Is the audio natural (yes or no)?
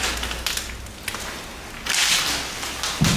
yes